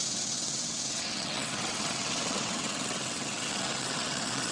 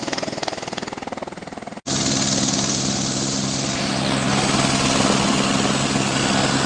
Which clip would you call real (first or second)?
second